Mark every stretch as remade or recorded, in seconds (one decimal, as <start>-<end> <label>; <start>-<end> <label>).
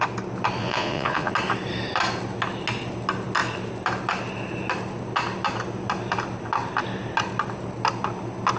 0.0-0.6 recorded; 0.6-1.3 remade; 1.3-8.6 recorded